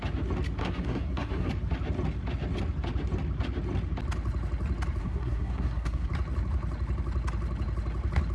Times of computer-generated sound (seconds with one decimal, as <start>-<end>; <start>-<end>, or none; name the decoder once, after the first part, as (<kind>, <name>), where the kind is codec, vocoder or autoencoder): 0.6-1.5 (codec, SNAC); 5.0-6.1